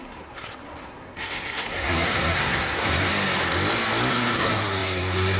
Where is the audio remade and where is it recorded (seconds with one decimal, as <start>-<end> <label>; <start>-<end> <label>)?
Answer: 0.0-3.1 remade; 3.1-4.1 recorded; 4.1-5.4 remade